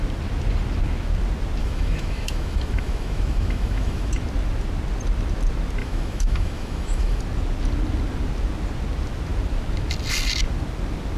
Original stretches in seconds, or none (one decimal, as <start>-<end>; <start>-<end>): 0.0-1.6; 4.1-5.8; 7.2-11.2